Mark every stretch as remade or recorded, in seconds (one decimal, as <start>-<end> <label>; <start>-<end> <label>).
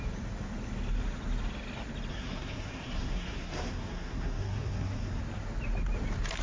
0.0-2.1 recorded; 2.1-5.2 remade; 5.2-6.4 recorded